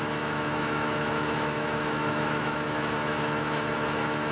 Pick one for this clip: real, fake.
fake